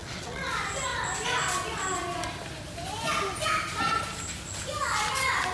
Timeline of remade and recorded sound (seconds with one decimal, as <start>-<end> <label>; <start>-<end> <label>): 0.0-0.5 remade; 0.5-5.5 recorded